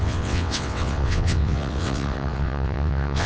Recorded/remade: remade